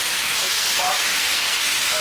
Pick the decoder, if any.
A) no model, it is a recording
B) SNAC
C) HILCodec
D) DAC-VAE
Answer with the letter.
B